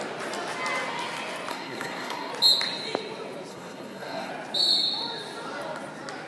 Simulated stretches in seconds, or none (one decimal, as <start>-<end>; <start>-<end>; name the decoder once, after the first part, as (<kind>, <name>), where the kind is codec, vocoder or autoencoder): 1.5-2.3 (codec, SNAC); 3.5-4.3